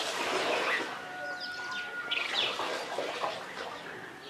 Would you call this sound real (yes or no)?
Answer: yes